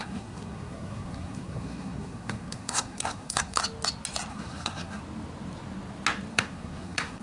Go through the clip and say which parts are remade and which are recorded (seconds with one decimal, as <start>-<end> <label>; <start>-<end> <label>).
0.0-3.6 remade; 3.6-4.3 recorded; 4.3-5.0 remade; 5.0-6.3 recorded; 6.3-7.2 remade